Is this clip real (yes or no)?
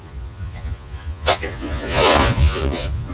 no